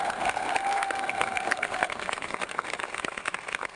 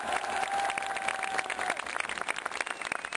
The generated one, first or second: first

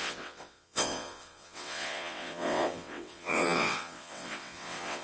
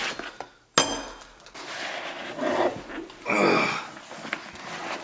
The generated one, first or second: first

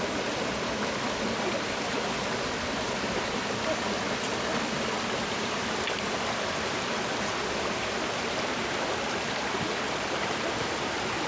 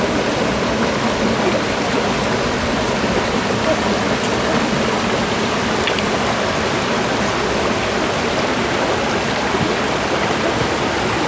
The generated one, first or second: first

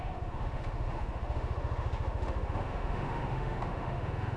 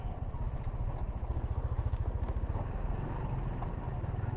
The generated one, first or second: first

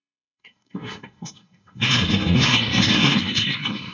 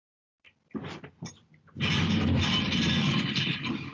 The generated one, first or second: first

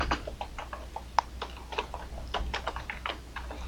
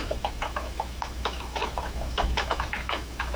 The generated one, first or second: second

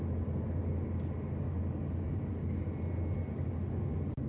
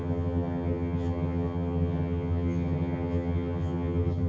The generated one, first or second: second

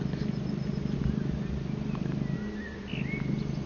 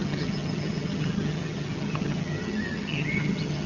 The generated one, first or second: second